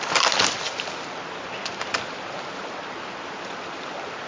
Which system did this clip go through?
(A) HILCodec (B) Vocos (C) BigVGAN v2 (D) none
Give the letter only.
D